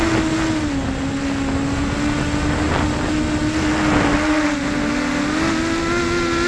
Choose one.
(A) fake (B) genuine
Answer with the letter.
B